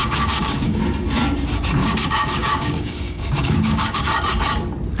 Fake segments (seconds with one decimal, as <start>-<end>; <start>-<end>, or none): 0.0-0.8; 1.8-4.0